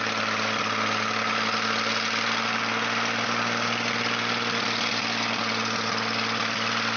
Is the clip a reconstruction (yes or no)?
no